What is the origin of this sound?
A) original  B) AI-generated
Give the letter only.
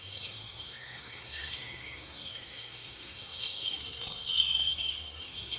B